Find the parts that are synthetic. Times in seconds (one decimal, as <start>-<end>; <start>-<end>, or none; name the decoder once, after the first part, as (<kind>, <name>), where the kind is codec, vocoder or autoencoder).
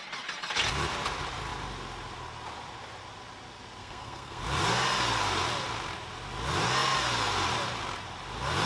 3.8-4.4 (codec, SNAC)